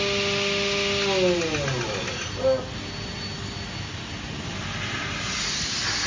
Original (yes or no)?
yes